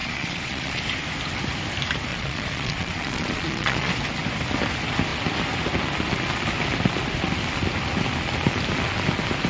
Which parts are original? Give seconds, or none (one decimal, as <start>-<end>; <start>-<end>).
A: 0.8-2.1; 3.9-9.5